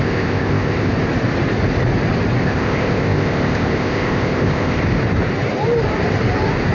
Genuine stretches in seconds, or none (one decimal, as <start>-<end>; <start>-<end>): 0.9-2.4; 4.8-6.7